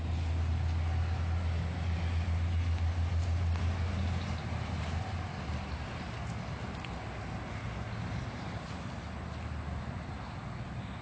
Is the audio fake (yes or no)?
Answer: no